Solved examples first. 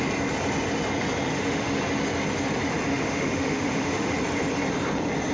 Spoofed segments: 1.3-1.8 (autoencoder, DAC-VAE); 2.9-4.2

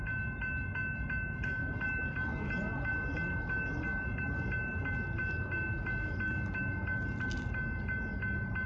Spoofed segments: none

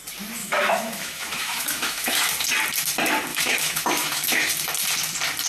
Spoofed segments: 0.4-2.3 (autoencoder, DAC-VAE); 3.3-4.5

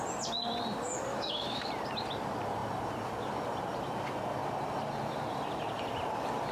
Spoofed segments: 1.1-1.7 (autoencoder, DAC-VAE)

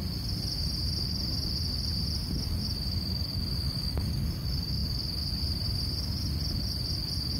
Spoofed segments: none

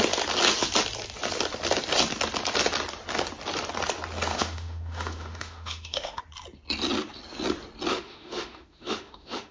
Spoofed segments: 4.3-6.2 (autoencoder, DAC-VAE); 7.9-9.5

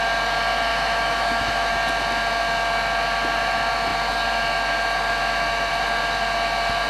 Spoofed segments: 0.7-1.7 (autoencoder, DAC-VAE)

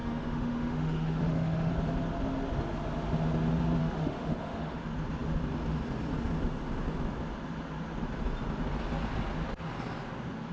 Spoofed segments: 0.0-1.7 (autoencoder, DAC-VAE); 3.8-4.8